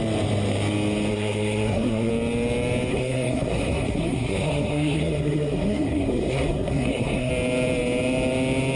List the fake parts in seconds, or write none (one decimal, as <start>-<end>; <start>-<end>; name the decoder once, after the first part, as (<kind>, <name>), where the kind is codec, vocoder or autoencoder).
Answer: 1.1-2.1 (codec, SNAC); 2.9-7.3